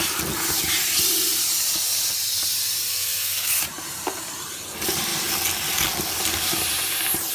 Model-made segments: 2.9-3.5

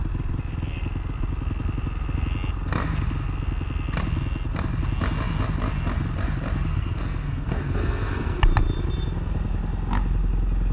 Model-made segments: 6.7-8.4

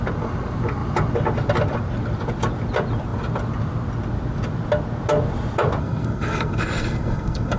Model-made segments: 5.8-7.6

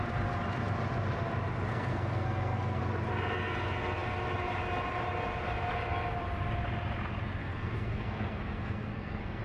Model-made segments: 1.7-2.8; 7.4-9.4

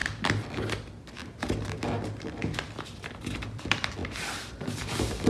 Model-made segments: 3.2-4.0; 4.6-5.3

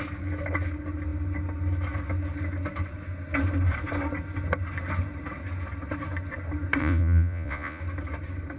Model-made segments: 6.8-7.8

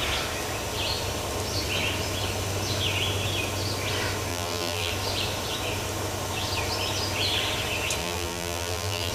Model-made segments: 4.3-4.9; 8.0-9.1